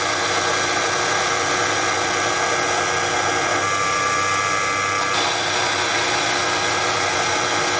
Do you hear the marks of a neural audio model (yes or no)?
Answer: no